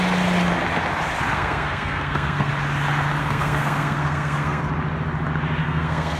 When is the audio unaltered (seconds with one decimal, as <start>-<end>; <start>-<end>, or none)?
0.0-1.3; 2.5-3.2; 4.6-5.6